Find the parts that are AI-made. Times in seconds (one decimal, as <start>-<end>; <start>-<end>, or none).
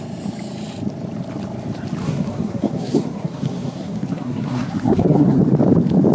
2.0-5.4